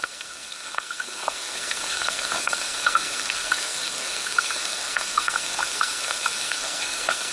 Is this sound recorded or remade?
remade